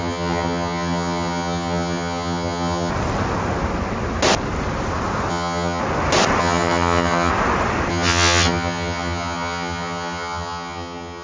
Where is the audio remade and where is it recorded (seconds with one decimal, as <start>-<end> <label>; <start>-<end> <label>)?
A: 0.0-2.9 remade; 2.9-5.3 recorded; 5.3-5.8 remade; 5.8-6.4 recorded; 6.4-7.3 remade; 7.3-7.9 recorded; 7.9-11.2 remade